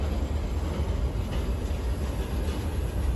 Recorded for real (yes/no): yes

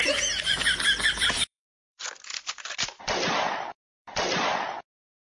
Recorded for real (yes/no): no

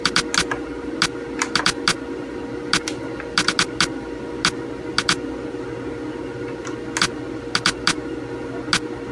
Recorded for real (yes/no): yes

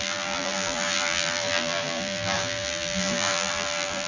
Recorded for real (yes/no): no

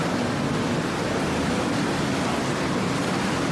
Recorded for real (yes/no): yes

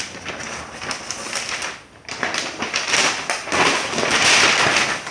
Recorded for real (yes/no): yes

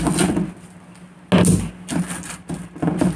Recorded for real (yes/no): yes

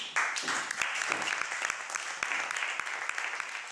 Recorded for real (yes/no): yes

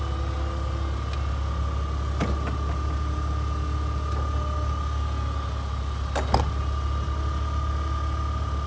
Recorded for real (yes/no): yes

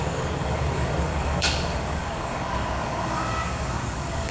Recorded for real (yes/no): no